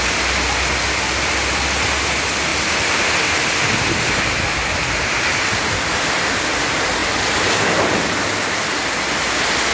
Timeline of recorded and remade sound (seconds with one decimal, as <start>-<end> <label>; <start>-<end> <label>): 0.0-2.5 recorded; 2.5-6.4 remade; 6.4-9.7 recorded